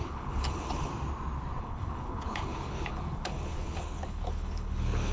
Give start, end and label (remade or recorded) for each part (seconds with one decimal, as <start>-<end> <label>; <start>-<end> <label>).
0.0-0.9 remade; 0.9-1.6 recorded; 1.6-5.1 remade